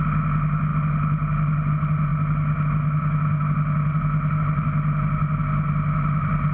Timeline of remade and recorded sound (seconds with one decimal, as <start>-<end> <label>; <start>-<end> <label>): 0.0-6.5 recorded